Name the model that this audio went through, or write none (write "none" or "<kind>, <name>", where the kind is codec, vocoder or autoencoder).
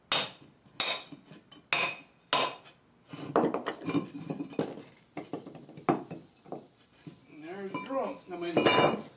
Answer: none